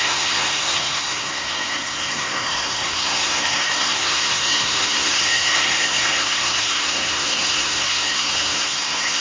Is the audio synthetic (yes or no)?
yes